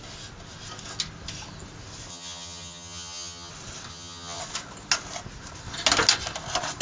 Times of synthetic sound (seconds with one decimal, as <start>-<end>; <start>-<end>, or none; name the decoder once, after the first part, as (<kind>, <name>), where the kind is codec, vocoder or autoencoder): 2.1-3.5 (vocoder, HiFi-GAN); 3.9-4.4